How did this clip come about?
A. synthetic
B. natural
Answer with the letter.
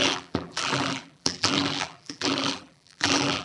A